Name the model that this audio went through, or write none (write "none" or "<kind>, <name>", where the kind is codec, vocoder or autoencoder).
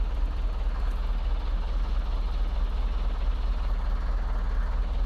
none